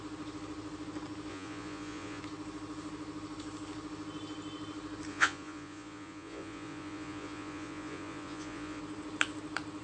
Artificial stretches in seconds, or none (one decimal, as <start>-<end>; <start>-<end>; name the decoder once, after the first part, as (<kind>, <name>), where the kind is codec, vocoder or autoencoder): 1.3-2.2 (vocoder, Vocos); 5.1-8.8